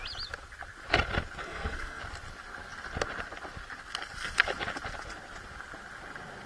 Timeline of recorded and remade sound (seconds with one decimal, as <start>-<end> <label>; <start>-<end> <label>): 0.0-1.4 recorded; 1.4-2.0 remade; 2.0-6.5 recorded